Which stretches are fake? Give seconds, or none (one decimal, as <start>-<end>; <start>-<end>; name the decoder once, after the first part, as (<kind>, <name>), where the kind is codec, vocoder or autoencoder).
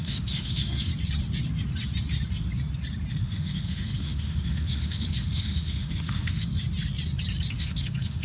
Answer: 0.0-0.9 (autoencoder, DAC-VAE); 3.1-6.5; 7.5-8.2